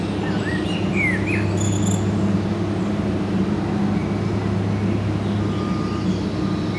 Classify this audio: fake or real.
real